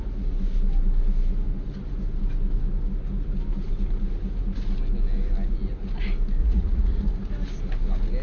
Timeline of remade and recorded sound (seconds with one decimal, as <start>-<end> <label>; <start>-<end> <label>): 0.0-6.4 recorded; 6.4-7.1 remade; 7.1-8.2 recorded